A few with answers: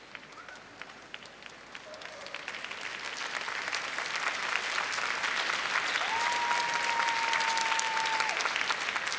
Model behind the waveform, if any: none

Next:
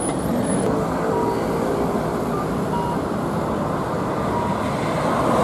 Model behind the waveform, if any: none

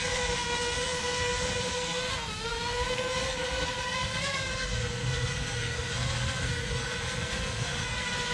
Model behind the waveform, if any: codec, SNAC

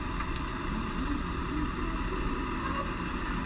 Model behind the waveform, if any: none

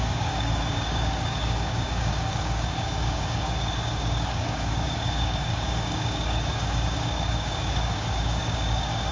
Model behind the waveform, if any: codec, DAC